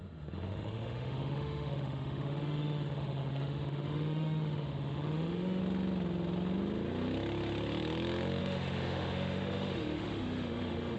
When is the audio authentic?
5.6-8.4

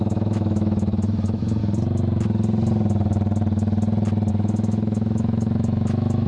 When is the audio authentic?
1.6-4.3